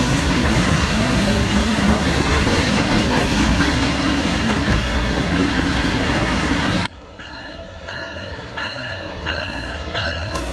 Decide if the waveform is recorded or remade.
remade